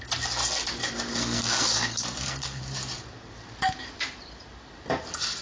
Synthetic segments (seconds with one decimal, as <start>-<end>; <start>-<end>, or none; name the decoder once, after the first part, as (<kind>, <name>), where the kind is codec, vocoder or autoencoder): 1.1-2.6 (codec, SNAC)